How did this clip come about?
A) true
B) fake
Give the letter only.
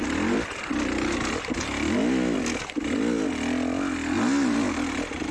A